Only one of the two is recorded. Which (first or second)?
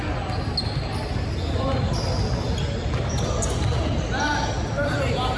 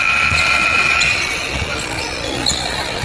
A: first